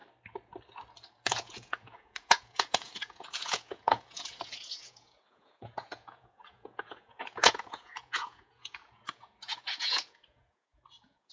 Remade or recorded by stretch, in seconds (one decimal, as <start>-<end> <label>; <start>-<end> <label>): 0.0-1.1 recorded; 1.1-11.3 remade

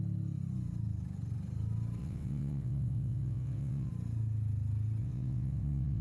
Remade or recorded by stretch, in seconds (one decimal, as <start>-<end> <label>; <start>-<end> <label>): 0.0-2.0 recorded; 2.0-3.9 remade; 3.9-5.0 recorded; 5.0-6.0 remade

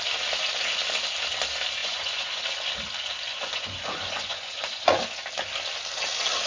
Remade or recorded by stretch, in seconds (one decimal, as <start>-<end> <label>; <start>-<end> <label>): 0.0-1.8 recorded; 1.8-2.4 remade; 2.4-3.3 recorded; 3.3-5.0 remade; 5.0-6.5 recorded